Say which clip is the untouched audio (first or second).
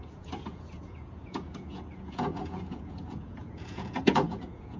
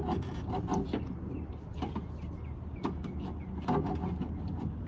second